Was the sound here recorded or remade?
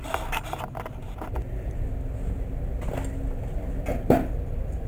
recorded